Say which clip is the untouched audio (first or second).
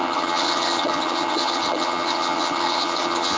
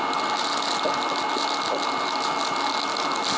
second